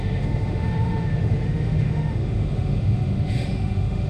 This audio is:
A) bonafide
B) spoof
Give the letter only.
B